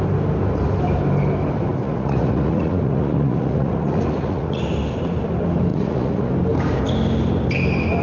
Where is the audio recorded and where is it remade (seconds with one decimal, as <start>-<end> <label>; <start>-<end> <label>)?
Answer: 0.0-1.7 recorded; 1.7-4.6 remade; 4.6-5.7 recorded; 5.7-6.3 remade; 6.3-8.0 recorded